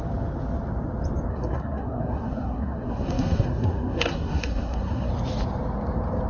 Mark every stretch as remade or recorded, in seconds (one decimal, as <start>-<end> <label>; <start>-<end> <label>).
0.0-1.3 recorded; 1.3-5.1 remade; 5.1-6.3 recorded